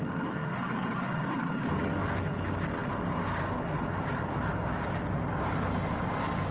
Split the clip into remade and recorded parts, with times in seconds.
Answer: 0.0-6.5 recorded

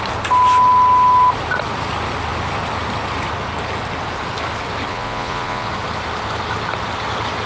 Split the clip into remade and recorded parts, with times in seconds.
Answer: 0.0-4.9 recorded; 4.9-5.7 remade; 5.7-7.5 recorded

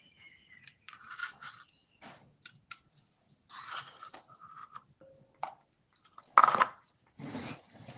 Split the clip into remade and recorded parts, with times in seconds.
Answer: 0.0-1.2 remade; 1.2-2.9 recorded; 2.9-4.6 remade; 4.6-6.5 recorded; 6.5-8.0 remade

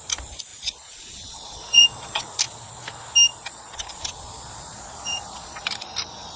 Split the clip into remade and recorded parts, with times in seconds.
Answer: 0.0-0.5 recorded; 0.5-2.2 remade; 2.2-3.3 recorded; 3.3-5.7 remade; 5.7-6.4 recorded

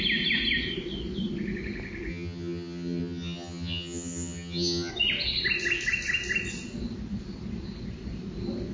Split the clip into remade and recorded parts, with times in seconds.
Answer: 0.0-2.1 recorded; 2.1-4.9 remade; 4.9-8.7 recorded